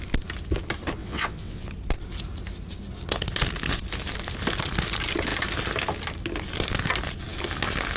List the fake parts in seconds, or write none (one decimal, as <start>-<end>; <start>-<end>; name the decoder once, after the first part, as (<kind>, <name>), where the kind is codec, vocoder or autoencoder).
1.0-1.7 (vocoder, WaveNeXt)